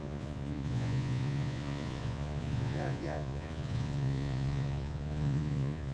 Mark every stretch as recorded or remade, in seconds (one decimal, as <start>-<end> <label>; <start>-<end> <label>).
0.0-5.9 remade